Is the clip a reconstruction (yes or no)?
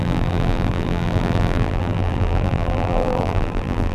yes